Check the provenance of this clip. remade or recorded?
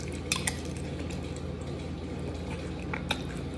recorded